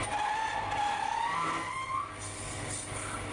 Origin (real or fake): real